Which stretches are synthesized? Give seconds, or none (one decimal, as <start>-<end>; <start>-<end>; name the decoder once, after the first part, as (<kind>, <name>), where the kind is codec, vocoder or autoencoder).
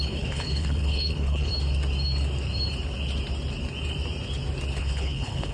0.0-1.5 (codec, HILCodec); 4.8-5.5